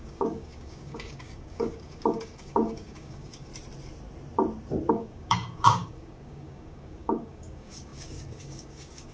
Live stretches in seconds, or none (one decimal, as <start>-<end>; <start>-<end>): 3.5-4.9